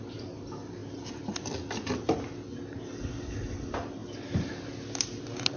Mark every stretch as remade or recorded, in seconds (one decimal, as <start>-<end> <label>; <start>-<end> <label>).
0.0-5.6 recorded